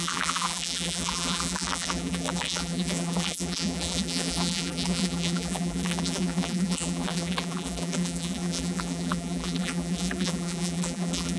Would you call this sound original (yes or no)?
no